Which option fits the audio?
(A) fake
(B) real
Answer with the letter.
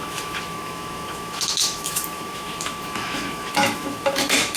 A